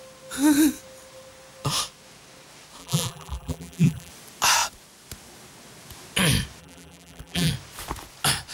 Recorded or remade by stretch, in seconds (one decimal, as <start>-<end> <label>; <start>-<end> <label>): 0.0-2.8 recorded; 2.8-4.1 remade; 4.1-6.6 recorded; 6.6-7.5 remade; 7.5-8.5 recorded